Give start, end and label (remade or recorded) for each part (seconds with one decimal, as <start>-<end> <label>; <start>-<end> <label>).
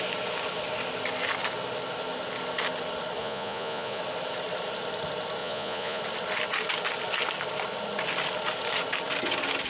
0.0-3.2 recorded; 3.2-4.0 remade; 4.0-5.4 recorded; 5.4-6.0 remade; 6.0-9.7 recorded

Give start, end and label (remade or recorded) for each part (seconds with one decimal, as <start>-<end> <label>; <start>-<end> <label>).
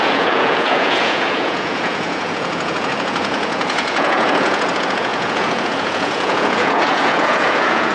0.0-7.9 remade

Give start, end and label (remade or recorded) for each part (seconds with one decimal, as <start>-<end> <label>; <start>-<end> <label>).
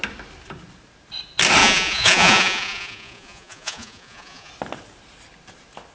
0.0-1.6 recorded; 1.6-4.5 remade; 4.5-5.9 recorded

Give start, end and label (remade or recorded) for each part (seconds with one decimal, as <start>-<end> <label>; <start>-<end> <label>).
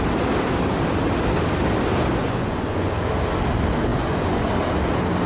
0.0-2.2 recorded; 2.2-2.9 remade; 2.9-3.9 recorded; 3.9-4.5 remade; 4.5-5.3 recorded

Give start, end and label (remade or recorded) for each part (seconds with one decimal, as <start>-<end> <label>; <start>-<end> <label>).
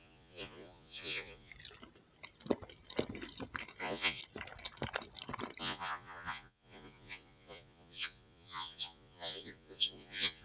0.0-1.5 remade; 1.5-3.8 recorded; 3.8-4.2 remade; 4.2-5.6 recorded; 5.6-10.4 remade